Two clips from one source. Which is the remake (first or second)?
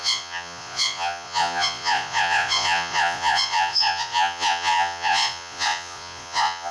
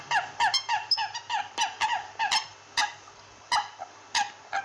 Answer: first